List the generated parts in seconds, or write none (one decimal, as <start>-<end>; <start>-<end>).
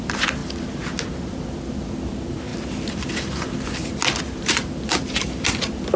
none